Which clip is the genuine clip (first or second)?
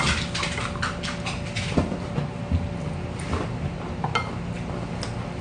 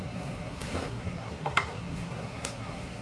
first